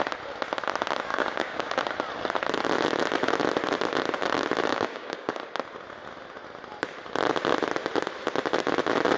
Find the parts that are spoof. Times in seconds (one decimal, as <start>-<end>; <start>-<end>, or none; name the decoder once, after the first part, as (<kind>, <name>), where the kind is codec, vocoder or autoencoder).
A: 1.1-1.7 (codec, DAC); 4.7-5.4